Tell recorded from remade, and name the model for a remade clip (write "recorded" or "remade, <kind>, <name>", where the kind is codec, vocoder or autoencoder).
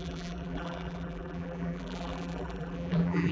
remade, vocoder, BigVGAN v2